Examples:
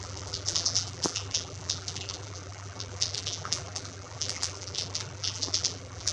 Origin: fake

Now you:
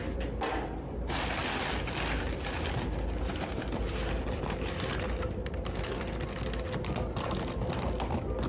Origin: real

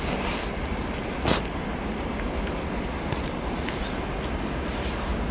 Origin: real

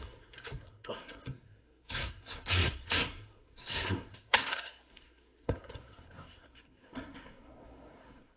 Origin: fake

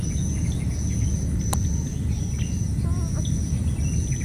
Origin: real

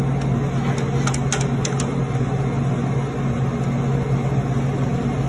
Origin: real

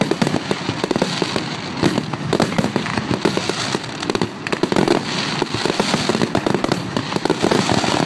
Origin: real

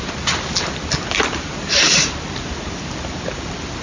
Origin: real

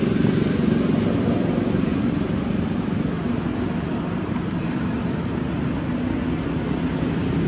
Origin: real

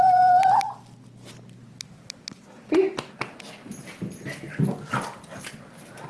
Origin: real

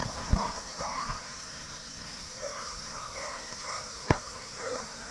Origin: fake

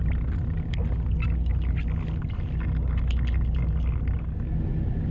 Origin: real